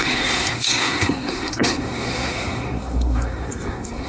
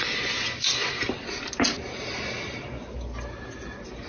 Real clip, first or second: second